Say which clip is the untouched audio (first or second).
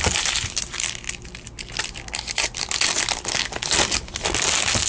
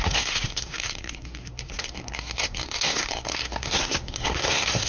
first